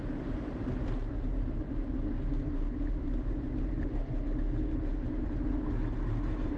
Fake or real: real